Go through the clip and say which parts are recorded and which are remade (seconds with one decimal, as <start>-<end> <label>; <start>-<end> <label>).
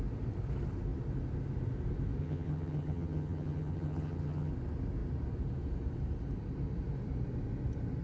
0.0-2.2 recorded; 2.2-4.5 remade; 4.5-8.0 recorded